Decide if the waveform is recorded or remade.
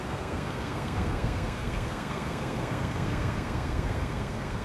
remade